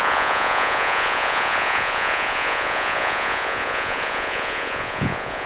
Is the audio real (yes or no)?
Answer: no